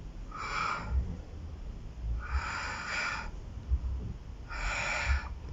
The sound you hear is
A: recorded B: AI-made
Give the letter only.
A